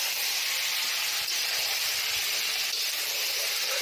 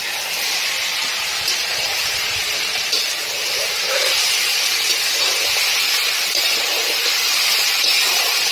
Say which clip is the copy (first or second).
second